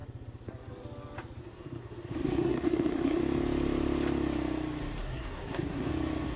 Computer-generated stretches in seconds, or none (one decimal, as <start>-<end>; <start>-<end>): 1.4-3.2; 5.0-5.9